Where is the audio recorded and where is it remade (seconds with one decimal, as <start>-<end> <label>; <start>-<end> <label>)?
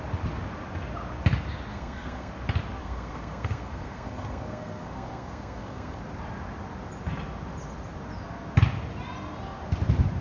0.0-1.7 recorded; 1.7-2.3 remade; 2.3-2.8 recorded; 2.8-6.0 remade; 6.0-10.2 recorded